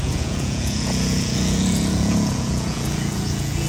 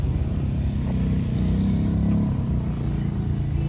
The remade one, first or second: first